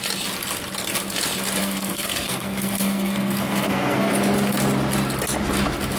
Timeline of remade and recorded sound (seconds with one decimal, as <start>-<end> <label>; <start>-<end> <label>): 0.0-1.6 recorded; 1.6-4.1 remade; 4.1-6.0 recorded